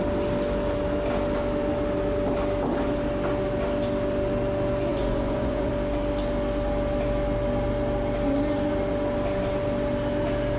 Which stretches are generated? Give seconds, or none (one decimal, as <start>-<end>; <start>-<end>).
4.9-5.7